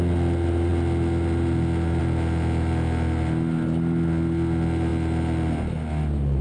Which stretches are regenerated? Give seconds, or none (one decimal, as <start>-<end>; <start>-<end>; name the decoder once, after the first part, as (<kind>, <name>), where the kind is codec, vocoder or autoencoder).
none

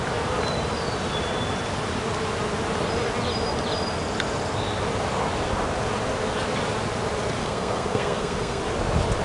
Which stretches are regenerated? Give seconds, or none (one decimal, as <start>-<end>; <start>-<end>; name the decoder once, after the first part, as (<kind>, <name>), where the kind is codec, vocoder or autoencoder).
7.4-8.6 (codec, SNAC)

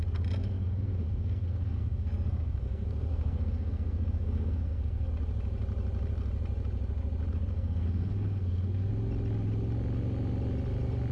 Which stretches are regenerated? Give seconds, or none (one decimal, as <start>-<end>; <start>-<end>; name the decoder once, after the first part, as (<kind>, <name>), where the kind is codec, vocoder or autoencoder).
0.4-5.1 (codec, SNAC); 7.5-8.9

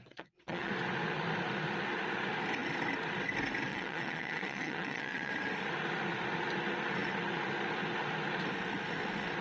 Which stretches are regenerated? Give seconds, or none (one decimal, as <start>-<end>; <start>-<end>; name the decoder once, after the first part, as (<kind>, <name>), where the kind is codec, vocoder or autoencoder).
0.0-0.7 (vocoder, WaveNeXt); 3.7-5.3

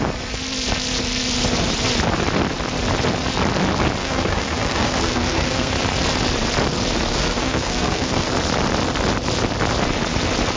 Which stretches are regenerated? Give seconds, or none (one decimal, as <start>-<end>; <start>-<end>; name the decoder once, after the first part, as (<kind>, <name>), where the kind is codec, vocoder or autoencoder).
4.0-5.7 (codec, SNAC); 7.1-8.3

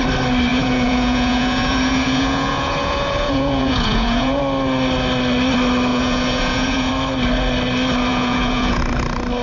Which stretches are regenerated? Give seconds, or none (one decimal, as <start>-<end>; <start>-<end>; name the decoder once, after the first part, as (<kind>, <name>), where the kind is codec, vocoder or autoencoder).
0.5-4.4 (vocoder, Vocos); 5.9-6.9; 8.1-8.8

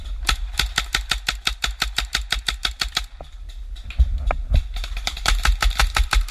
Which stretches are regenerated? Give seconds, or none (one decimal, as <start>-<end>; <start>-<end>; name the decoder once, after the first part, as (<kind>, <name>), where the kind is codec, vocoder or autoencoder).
none